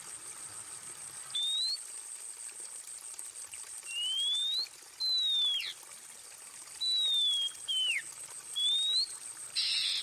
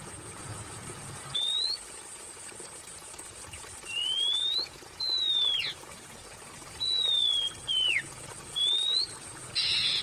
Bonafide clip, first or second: first